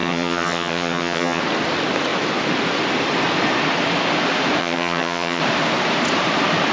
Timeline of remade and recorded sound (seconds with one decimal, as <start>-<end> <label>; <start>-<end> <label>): 0.0-1.4 remade; 1.4-4.6 recorded; 4.6-5.4 remade; 5.4-6.7 recorded